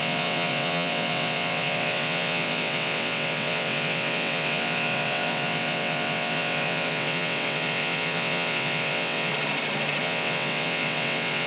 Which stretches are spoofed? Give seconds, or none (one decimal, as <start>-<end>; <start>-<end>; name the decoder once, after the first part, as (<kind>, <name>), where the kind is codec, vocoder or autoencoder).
0.0-9.3 (vocoder, WaveNeXt); 10.0-11.5